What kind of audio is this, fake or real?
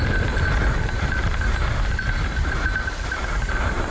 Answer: real